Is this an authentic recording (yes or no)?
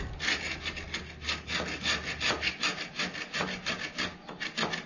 yes